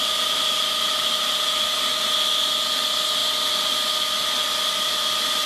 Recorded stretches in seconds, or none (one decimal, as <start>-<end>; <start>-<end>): 0.0-5.5